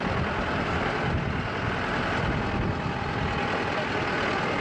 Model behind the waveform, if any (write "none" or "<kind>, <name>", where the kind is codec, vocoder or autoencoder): none